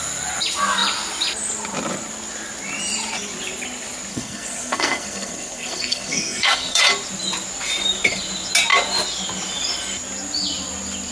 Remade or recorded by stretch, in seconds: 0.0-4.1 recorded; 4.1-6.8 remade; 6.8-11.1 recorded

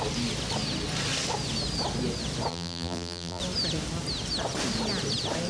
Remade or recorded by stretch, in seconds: 0.0-2.5 recorded; 2.5-3.4 remade; 3.4-5.5 recorded

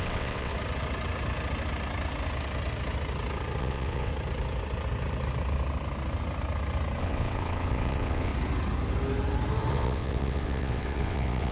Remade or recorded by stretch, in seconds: 0.0-0.5 remade; 0.5-3.6 recorded; 3.6-4.1 remade; 4.1-7.0 recorded; 7.0-8.3 remade; 8.3-9.7 recorded; 9.7-11.5 remade

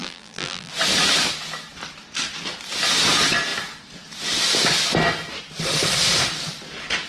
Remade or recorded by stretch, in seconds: 0.0-0.7 remade; 0.7-7.1 recorded

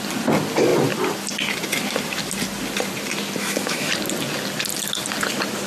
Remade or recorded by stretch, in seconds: 0.0-3.4 recorded; 3.4-3.9 remade; 3.9-5.7 recorded

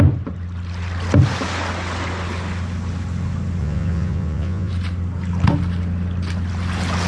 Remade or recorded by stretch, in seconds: 0.0-3.6 recorded; 3.6-4.7 remade; 4.7-7.1 recorded

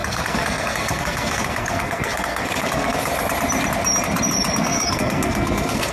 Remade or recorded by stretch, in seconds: 0.0-3.1 remade; 3.1-4.6 recorded; 4.6-5.9 remade

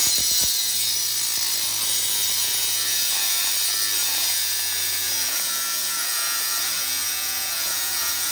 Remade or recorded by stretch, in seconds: 0.0-0.6 remade; 0.6-2.4 recorded; 2.4-3.1 remade; 3.1-4.0 recorded; 4.0-8.3 remade